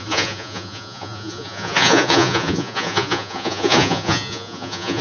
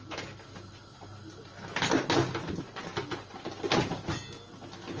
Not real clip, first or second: first